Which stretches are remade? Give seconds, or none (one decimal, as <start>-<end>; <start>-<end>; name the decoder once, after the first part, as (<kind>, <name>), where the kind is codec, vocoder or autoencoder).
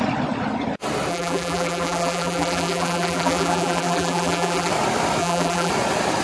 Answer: 1.1-4.7 (vocoder, BigVGAN v2); 5.2-5.7